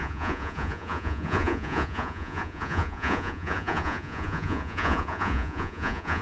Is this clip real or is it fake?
fake